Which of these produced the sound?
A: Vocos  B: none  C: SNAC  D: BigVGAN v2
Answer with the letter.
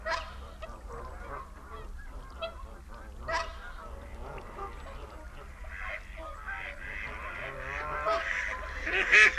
B